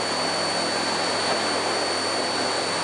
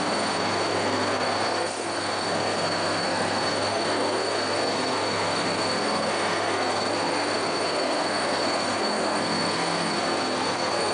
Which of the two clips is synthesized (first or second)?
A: second